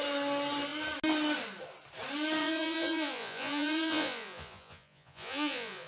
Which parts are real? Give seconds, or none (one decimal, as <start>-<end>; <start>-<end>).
0.0-2.4